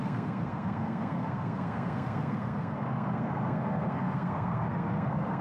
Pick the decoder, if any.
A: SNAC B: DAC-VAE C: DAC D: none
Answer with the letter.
A